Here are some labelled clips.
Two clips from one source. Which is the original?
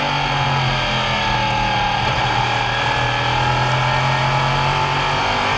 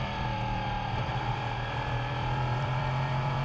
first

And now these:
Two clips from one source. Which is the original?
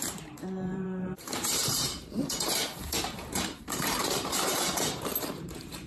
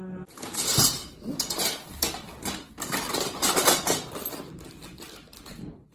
second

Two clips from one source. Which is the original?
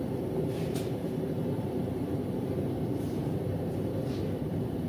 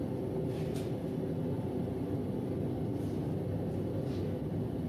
second